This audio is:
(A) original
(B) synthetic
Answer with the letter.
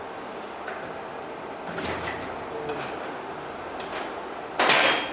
A